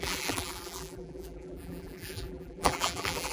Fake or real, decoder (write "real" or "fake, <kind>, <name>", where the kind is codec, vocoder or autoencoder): fake, vocoder, BigVGAN v2